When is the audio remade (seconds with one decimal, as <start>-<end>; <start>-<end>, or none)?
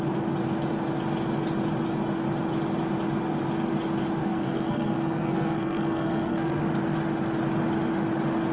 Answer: 4.2-6.6